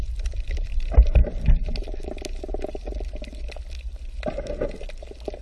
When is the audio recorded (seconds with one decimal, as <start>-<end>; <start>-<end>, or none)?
0.0-5.4

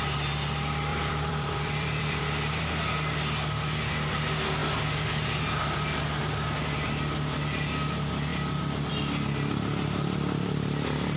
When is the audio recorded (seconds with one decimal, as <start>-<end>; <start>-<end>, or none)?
0.0-0.9; 2.2-11.2

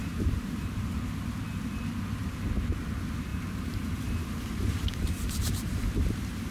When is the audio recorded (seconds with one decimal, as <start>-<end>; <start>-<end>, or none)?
1.1-3.3; 5.9-6.5

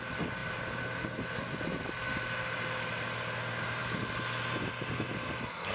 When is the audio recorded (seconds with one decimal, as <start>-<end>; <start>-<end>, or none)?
0.0-5.7

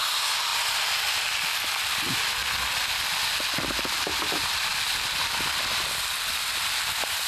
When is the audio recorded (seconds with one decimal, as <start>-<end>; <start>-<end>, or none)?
0.5-1.1; 2.4-4.3; 4.7-6.3

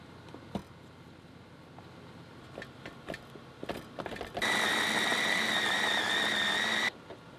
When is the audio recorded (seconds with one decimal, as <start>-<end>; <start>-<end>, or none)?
0.0-7.4